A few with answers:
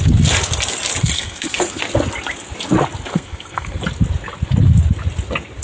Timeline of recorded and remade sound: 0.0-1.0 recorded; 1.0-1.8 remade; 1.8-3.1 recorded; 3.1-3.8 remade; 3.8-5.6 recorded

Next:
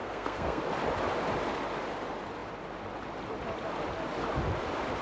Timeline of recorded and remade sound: 0.0-0.6 remade; 0.6-5.0 recorded

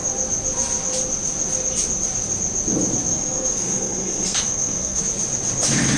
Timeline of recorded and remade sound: 0.0-3.1 recorded; 3.1-5.0 remade; 5.0-6.0 recorded